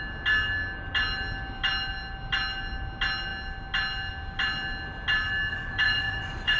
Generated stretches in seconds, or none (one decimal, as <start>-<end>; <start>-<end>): 5.5-6.6